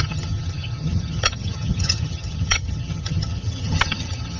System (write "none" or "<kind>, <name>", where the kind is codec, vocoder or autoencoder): vocoder, HiFi-GAN